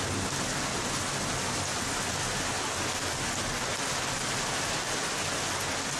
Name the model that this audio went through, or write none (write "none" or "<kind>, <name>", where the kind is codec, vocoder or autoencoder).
none